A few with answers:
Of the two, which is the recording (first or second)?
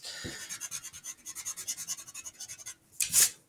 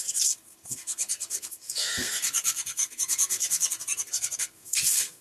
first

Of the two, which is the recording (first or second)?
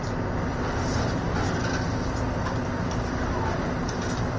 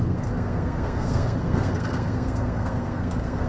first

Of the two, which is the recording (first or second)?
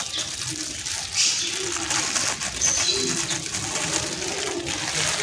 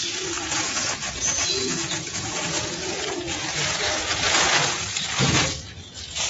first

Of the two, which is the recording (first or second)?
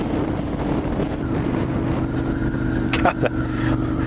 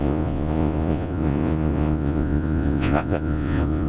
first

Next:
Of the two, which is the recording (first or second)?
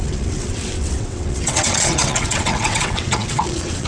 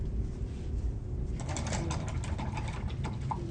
second